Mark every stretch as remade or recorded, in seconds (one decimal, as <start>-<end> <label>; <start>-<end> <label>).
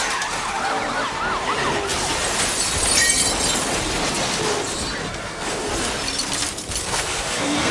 0.0-5.0 recorded; 5.0-5.7 remade; 5.7-6.8 recorded; 6.8-7.7 remade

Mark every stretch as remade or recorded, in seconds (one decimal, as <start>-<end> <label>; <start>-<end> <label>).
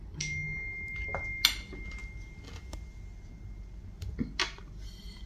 0.0-5.3 recorded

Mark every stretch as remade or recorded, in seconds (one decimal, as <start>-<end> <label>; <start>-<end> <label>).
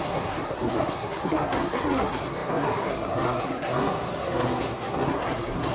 0.0-5.7 remade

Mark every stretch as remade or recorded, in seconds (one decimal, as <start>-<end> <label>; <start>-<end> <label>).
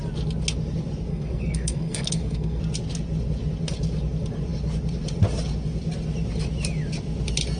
0.0-1.1 recorded; 1.1-2.6 remade; 2.6-7.6 recorded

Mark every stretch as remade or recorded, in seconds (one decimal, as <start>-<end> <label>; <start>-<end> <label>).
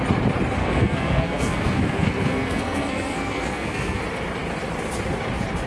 0.0-0.6 recorded; 0.6-4.0 remade; 4.0-5.7 recorded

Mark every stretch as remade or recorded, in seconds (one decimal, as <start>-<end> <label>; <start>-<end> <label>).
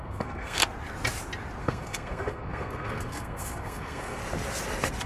0.0-0.6 remade; 0.6-1.6 recorded; 1.6-4.2 remade; 4.2-5.1 recorded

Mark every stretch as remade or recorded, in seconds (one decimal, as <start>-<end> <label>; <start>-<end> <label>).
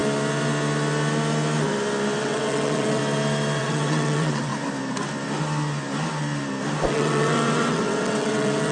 0.0-2.2 recorded; 2.2-3.0 remade; 3.0-3.6 recorded; 3.6-4.5 remade; 4.5-6.9 recorded; 6.9-8.7 remade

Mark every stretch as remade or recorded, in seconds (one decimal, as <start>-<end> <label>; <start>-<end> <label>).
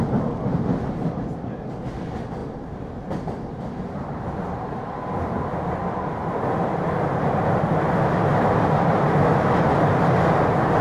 0.0-2.4 recorded; 2.4-3.8 remade; 3.8-5.5 recorded; 5.5-7.8 remade; 7.8-10.8 recorded